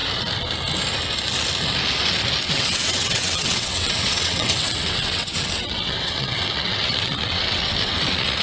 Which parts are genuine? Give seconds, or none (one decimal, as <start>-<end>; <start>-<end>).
0.0-2.4